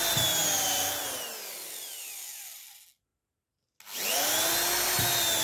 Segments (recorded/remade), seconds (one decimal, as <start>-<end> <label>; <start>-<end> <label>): 0.0-5.4 recorded